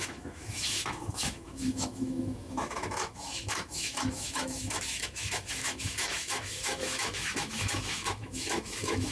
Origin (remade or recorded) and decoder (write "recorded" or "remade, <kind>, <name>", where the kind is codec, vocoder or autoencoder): remade, autoencoder, DAC-VAE